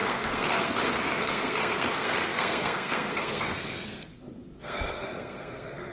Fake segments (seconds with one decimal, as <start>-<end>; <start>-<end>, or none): 0.0-4.1; 4.6-5.9